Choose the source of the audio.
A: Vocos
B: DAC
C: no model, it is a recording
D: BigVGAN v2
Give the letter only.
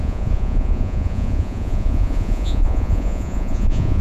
A